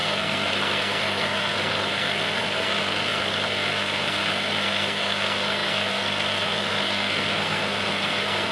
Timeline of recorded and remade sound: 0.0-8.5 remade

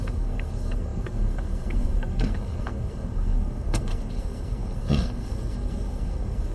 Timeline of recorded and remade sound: 0.0-6.5 remade